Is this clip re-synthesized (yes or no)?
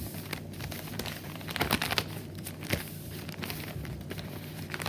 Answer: yes